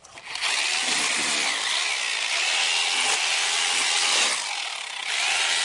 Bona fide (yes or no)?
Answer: yes